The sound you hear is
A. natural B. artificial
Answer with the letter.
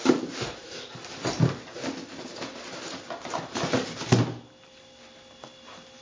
A